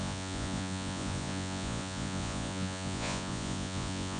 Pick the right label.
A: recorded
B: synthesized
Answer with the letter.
B